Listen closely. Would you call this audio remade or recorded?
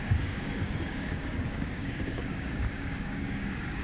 remade